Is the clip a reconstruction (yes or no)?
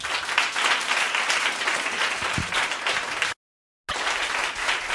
no